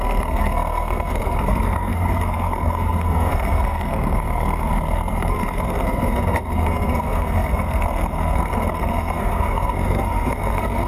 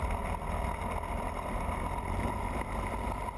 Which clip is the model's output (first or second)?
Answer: first